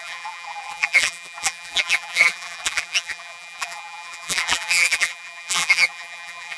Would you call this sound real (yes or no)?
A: no